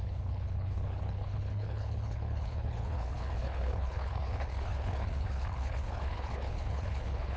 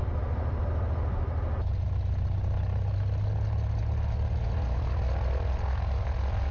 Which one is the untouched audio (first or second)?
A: second